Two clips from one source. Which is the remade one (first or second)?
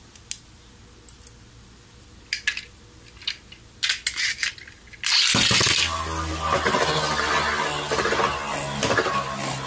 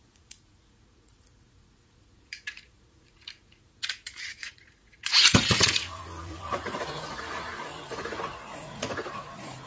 second